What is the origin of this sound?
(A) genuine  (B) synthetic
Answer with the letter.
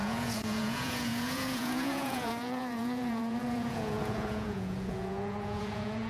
B